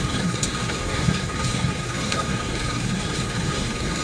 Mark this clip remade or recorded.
remade